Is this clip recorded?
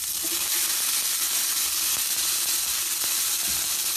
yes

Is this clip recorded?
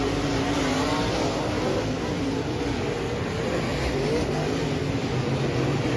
yes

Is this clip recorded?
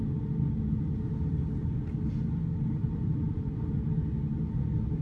yes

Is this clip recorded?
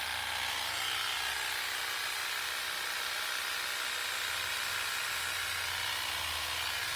yes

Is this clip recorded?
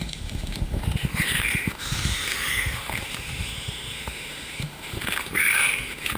no